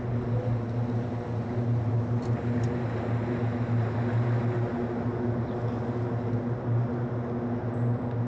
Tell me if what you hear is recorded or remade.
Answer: recorded